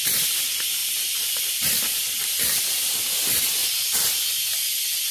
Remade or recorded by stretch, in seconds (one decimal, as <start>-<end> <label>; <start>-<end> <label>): 0.0-0.8 recorded; 0.8-2.0 remade; 2.0-5.1 recorded